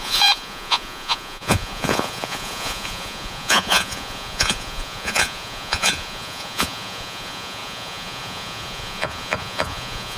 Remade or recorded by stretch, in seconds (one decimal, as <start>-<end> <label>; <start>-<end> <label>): 0.0-10.2 remade